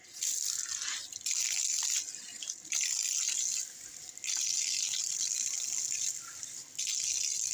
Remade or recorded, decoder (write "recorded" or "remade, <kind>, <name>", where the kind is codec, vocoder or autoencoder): recorded